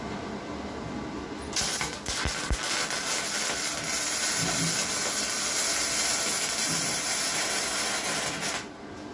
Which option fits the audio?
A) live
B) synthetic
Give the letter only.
A